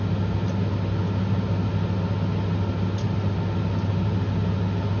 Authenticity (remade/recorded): recorded